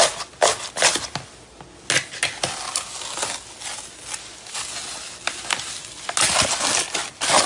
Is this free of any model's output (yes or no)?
yes